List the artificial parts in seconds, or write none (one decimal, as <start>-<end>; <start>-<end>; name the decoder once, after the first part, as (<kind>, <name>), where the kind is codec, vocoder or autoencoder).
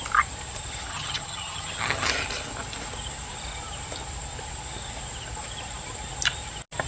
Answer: 0.9-2.1 (vocoder, HiFi-GAN)